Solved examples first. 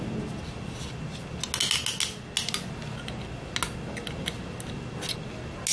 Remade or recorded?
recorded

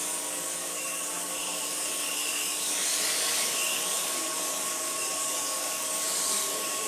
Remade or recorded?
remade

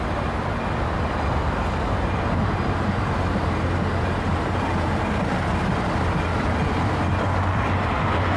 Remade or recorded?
recorded